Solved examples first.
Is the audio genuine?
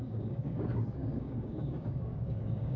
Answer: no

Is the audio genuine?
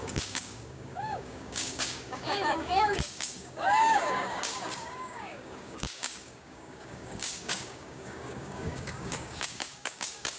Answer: no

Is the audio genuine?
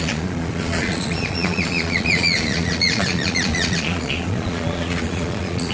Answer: no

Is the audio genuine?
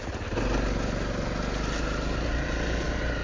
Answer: yes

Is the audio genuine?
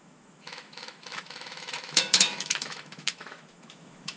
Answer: no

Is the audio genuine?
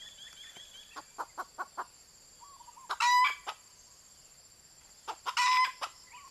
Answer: yes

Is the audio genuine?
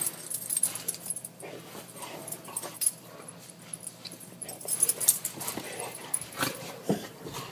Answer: no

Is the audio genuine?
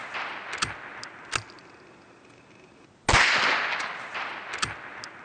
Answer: yes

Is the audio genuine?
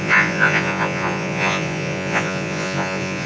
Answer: no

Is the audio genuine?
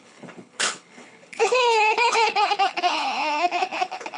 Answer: no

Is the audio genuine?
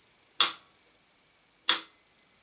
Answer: yes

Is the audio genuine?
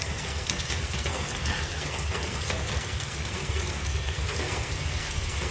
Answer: no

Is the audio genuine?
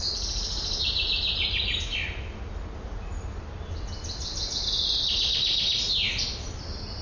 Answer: yes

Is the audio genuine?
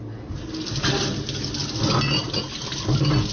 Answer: yes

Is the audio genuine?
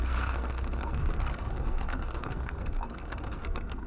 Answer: no